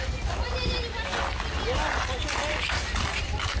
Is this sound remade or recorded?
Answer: recorded